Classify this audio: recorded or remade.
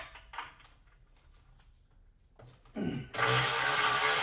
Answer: recorded